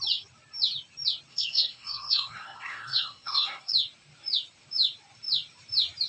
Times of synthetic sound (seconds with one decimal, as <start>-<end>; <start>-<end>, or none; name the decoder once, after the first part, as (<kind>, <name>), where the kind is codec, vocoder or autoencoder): 1.3-3.7 (codec, SNAC)